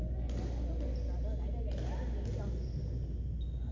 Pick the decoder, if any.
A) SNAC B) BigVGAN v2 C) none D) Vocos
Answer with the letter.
C